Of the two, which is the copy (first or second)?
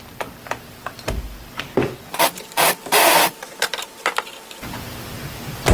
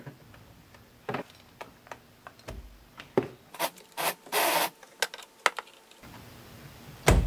first